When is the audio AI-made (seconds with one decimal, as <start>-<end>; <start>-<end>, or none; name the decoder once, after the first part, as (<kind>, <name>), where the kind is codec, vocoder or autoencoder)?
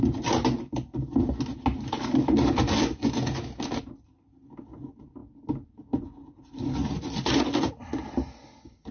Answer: none